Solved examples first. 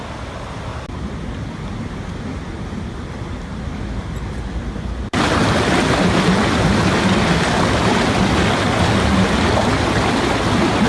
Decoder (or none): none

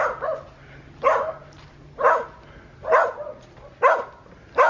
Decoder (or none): none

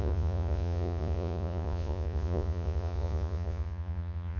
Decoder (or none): vocoder, Vocos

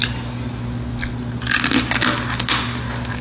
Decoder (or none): none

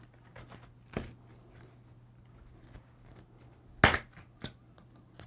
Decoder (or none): none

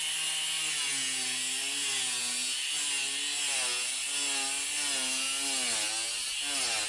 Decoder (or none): none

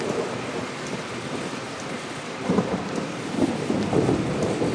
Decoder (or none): none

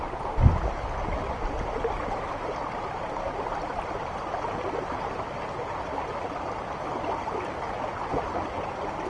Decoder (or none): none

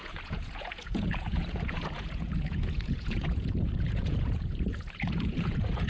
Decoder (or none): vocoder, Vocos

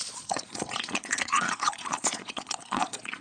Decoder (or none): vocoder, Vocos